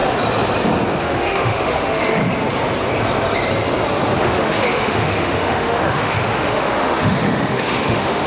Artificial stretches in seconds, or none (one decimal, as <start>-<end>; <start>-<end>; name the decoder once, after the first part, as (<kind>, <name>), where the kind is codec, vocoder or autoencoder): 1.0-2.2 (autoencoder, DAC-VAE); 4.2-8.3